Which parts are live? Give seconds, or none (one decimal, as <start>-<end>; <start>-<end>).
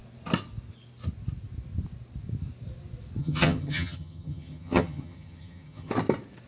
0.0-3.2; 5.9-6.5